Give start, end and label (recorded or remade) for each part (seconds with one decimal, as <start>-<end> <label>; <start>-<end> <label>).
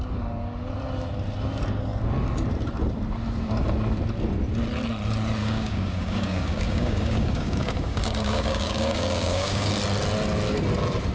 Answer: 0.0-5.4 recorded; 5.4-9.7 remade; 9.7-11.1 recorded